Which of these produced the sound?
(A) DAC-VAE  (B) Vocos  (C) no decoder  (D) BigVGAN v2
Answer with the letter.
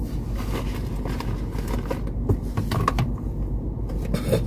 C